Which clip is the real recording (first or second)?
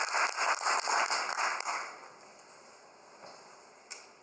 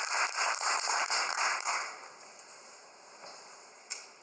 first